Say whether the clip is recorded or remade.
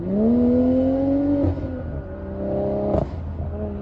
recorded